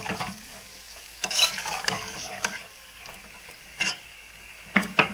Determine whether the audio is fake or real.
fake